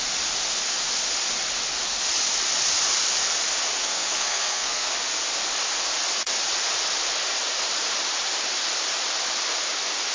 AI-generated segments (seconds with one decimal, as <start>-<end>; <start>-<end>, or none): 3.8-4.9